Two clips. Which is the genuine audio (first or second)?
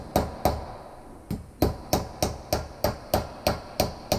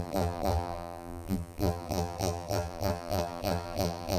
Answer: first